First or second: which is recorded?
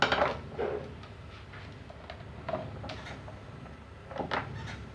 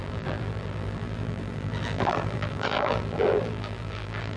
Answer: first